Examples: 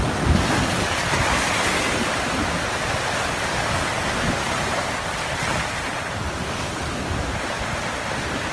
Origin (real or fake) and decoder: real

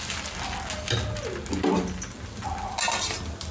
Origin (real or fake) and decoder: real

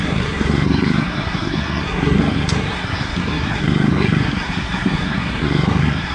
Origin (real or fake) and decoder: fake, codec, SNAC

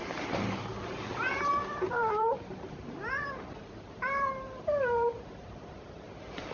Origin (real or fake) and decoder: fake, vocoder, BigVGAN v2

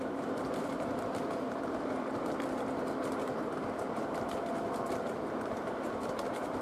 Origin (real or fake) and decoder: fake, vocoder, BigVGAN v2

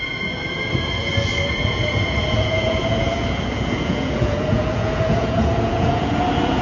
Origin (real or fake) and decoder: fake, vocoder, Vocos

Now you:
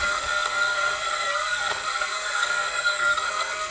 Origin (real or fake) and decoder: fake, codec, SNAC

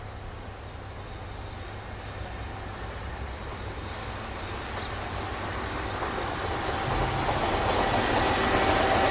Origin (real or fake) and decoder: real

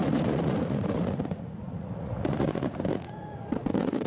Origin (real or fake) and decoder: fake, vocoder, Vocos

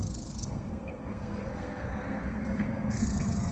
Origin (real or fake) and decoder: fake, codec, SNAC